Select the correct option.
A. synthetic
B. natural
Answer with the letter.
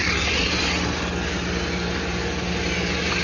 B